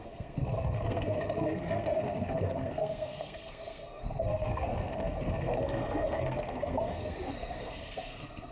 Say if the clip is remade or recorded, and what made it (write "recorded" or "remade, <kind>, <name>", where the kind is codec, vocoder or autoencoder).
remade, codec, SNAC